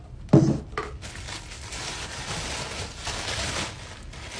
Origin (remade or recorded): recorded